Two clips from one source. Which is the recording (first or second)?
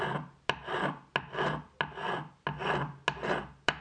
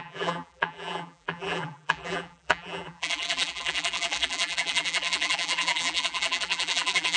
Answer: first